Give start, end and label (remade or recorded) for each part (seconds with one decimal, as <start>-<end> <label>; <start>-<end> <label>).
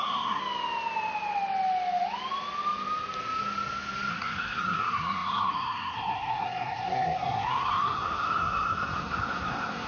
0.0-0.4 remade; 0.4-4.1 recorded; 4.1-9.9 remade